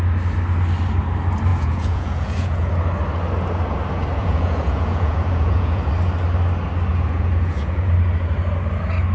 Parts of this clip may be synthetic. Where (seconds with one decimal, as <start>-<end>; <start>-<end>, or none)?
1.5-2.7; 4.2-5.8; 6.9-7.9